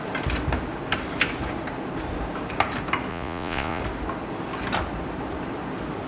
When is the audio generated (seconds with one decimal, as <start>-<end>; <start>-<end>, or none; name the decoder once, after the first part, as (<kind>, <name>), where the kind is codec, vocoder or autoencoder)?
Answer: 3.1-3.8 (vocoder, Vocos)